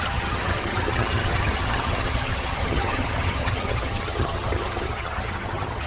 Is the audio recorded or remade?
remade